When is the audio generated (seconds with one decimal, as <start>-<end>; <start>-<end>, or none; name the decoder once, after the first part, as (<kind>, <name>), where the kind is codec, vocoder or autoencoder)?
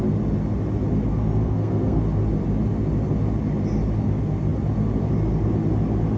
1.1-2.0 (codec, SNAC)